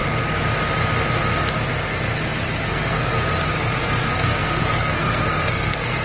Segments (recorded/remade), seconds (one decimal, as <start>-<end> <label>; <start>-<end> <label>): 0.0-2.7 recorded; 2.7-3.1 remade; 3.1-3.8 recorded; 3.8-6.0 remade